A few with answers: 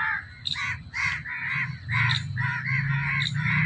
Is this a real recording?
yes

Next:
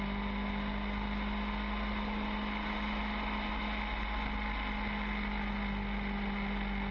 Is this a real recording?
yes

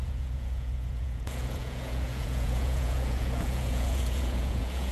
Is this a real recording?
no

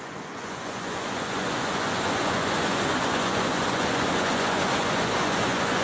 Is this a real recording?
no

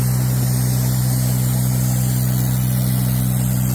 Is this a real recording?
yes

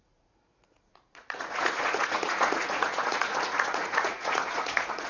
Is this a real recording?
no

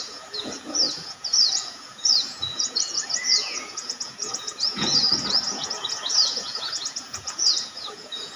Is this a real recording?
no